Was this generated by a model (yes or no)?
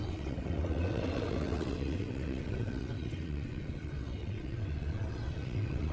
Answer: yes